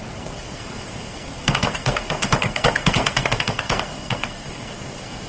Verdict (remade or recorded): remade